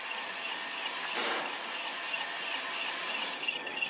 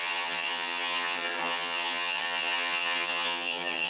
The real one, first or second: first